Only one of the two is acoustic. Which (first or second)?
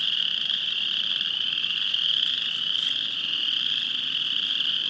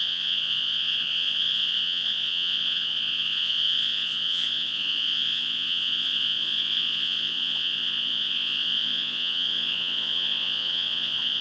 first